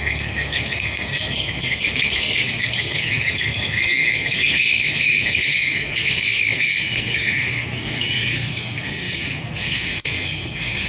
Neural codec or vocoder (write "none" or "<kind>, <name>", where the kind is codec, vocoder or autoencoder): codec, SNAC